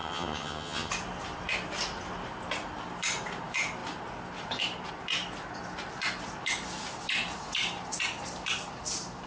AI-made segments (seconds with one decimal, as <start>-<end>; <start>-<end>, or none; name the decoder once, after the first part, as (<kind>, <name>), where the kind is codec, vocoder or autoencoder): 0.0-0.9 (vocoder, HiFi-GAN)